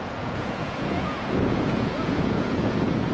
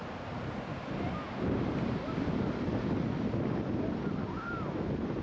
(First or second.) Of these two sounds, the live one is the second